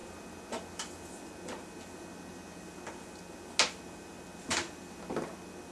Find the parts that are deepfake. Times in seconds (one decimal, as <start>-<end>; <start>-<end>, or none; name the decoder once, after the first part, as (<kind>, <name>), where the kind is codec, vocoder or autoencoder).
none